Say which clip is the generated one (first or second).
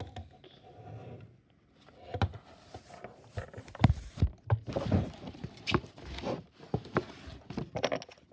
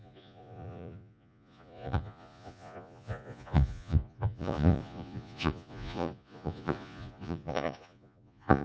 second